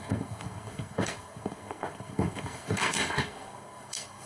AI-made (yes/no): yes